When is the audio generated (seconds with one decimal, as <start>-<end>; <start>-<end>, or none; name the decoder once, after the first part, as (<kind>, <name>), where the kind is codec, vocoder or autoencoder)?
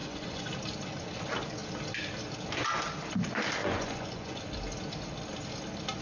0.0-0.5 (vocoder, Vocos); 3.6-4.4